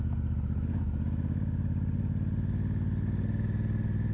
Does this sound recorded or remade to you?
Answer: recorded